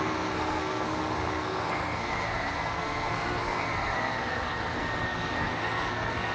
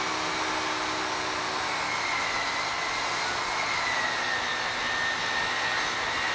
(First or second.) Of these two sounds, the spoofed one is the first